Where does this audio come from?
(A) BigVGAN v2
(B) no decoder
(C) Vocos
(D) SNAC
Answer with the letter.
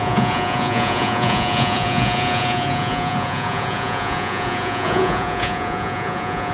C